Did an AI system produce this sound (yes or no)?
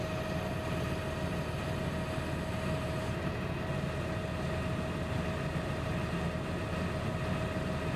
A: no